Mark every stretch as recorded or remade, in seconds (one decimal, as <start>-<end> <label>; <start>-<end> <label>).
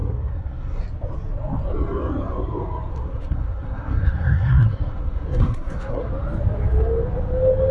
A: 0.0-0.8 remade; 0.8-2.9 recorded; 2.9-6.1 remade; 6.1-7.7 recorded